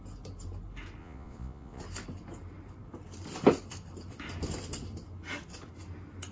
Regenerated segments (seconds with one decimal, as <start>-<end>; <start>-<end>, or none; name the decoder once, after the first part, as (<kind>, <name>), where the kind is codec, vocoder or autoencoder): 1.0-1.8 (vocoder, Vocos)